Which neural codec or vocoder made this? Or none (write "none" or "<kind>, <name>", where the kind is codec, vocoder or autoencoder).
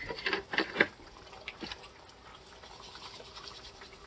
none